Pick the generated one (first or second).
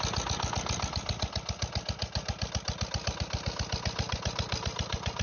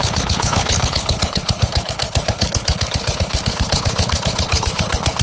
second